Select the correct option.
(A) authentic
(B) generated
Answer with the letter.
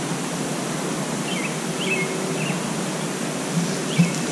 A